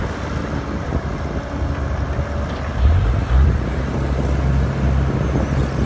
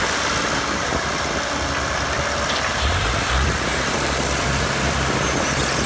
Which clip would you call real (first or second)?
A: first